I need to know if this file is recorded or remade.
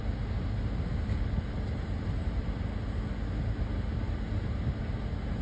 recorded